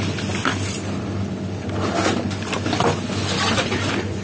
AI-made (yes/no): no